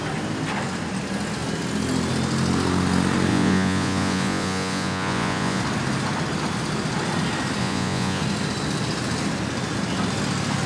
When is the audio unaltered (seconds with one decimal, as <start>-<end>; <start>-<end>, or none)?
0.0-3.3; 5.6-7.6; 8.2-10.7